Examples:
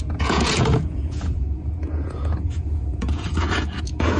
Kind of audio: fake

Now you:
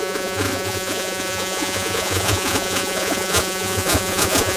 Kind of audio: fake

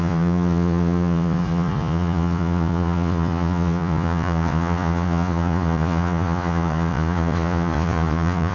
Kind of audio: fake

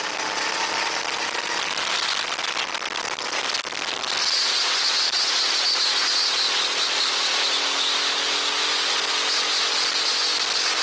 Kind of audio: real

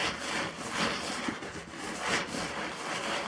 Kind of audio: real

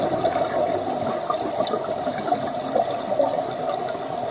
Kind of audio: real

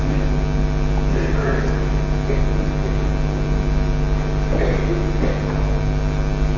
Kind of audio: real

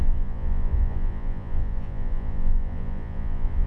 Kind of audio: fake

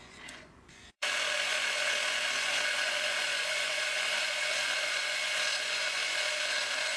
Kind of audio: fake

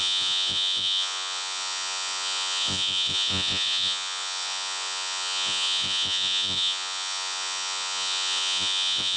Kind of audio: fake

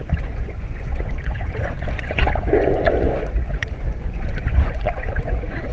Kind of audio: fake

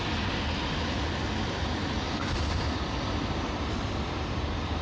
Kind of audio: real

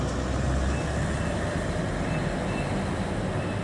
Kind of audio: real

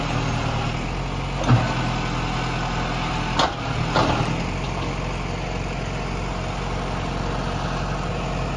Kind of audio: real